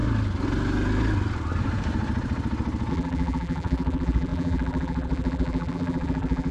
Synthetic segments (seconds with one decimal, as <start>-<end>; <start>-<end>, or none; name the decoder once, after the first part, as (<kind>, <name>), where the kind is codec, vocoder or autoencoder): 2.9-6.5 (vocoder, BigVGAN v2)